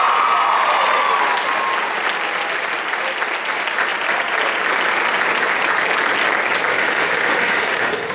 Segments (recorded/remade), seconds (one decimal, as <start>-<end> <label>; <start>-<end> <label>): 0.0-6.7 recorded; 6.7-8.1 remade